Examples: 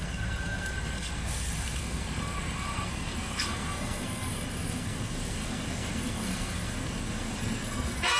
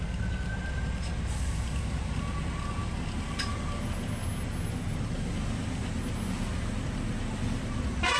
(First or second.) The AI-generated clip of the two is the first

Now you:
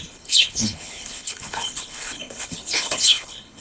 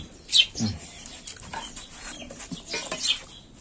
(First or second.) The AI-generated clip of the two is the first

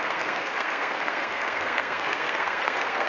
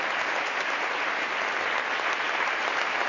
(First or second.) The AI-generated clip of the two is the first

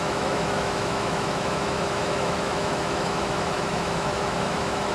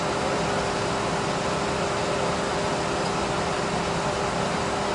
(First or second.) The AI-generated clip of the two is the first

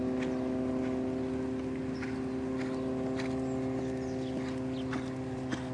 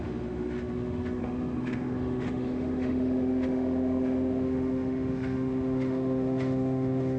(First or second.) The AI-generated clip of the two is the second